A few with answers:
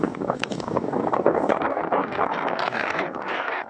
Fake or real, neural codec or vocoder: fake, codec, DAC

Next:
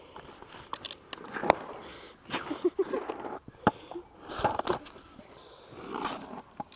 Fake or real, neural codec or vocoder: real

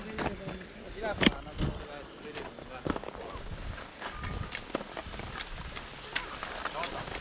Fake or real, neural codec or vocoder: real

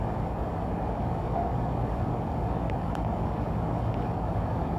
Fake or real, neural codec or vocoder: fake, codec, DAC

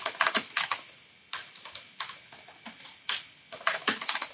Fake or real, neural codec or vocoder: real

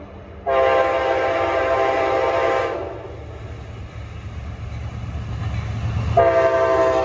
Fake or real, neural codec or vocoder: real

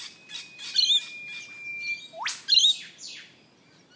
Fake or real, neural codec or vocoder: real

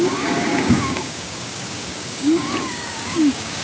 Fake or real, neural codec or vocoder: fake, codec, DAC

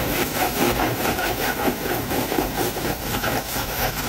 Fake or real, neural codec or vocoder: fake, codec, DAC